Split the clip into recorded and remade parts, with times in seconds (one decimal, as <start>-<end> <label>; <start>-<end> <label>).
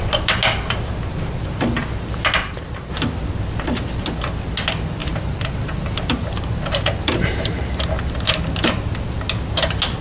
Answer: 0.0-2.4 recorded; 2.4-2.9 remade; 2.9-5.0 recorded; 5.0-7.8 remade; 7.8-10.0 recorded